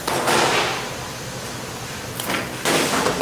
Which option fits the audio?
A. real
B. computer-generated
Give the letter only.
A